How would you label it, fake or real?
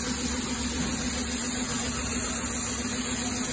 real